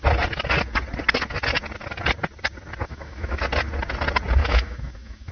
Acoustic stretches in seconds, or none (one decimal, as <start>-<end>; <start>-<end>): 0.0-2.8; 3.4-4.4